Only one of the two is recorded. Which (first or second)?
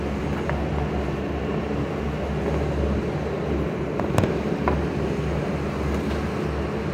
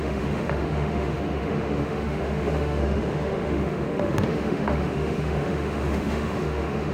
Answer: first